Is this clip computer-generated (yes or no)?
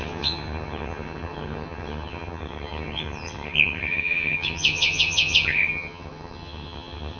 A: yes